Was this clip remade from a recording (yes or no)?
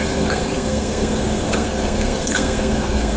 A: yes